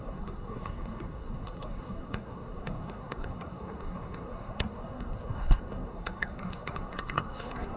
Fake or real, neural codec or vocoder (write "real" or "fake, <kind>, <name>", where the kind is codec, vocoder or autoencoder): fake, codec, SNAC